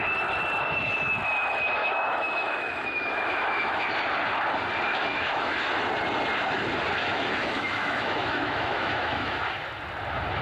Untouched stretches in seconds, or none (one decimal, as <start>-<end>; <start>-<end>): 0.0-1.8; 3.9-4.9; 5.7-7.0; 9.4-10.4